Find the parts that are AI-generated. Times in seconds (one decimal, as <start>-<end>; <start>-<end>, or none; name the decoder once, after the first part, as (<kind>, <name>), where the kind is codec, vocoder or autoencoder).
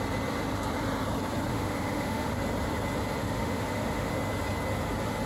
1.5-2.3 (autoencoder, DAC-VAE); 3.2-4.1